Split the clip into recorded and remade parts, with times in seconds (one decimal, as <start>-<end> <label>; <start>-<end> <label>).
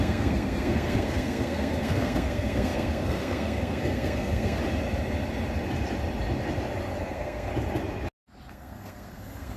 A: 0.0-4.6 remade; 4.6-7.0 recorded; 7.0-7.5 remade; 7.5-8.5 recorded; 8.5-9.6 remade